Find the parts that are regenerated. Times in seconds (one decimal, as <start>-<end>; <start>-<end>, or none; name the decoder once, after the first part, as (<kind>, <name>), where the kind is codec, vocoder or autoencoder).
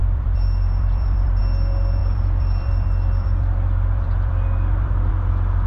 0.0-1.4 (vocoder, BigVGAN v2); 2.0-5.1